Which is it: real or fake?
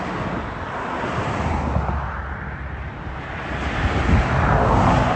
real